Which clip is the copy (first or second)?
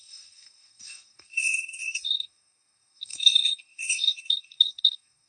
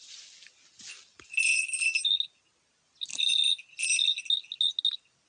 first